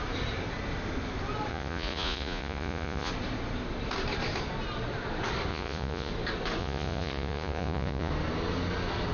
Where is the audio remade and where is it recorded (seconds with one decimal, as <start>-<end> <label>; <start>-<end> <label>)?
0.0-1.5 recorded; 1.5-3.1 remade; 3.1-5.5 recorded; 5.5-6.1 remade; 6.1-6.6 recorded; 6.6-8.1 remade; 8.1-9.1 recorded